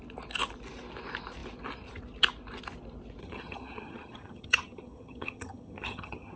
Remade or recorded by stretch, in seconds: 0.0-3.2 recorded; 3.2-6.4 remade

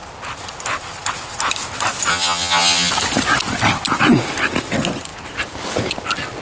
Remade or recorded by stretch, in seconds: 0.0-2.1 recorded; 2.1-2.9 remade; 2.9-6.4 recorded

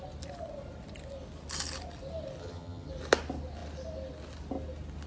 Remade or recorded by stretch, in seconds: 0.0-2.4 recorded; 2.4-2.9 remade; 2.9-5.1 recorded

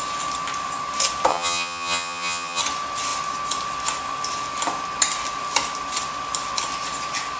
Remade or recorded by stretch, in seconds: 0.0-1.3 recorded; 1.3-2.6 remade; 2.6-7.4 recorded